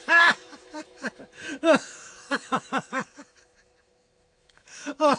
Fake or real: fake